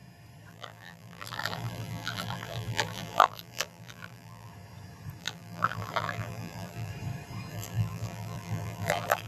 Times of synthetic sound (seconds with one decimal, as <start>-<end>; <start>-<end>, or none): 0.5-4.5; 5.2-6.9; 7.5-9.3